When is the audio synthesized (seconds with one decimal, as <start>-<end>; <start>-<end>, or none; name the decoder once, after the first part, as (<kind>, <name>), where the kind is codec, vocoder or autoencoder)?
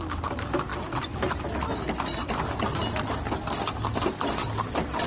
none